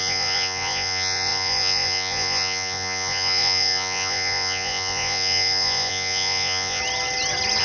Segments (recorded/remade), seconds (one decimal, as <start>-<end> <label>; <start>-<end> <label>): 0.0-6.8 remade; 6.8-7.6 recorded